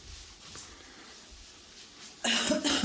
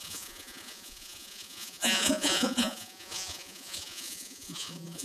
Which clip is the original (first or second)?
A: first